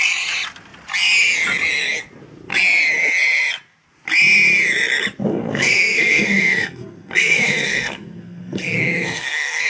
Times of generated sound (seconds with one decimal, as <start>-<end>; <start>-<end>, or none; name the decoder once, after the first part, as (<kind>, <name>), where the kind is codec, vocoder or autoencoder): 5.3-9.7 (codec, SNAC)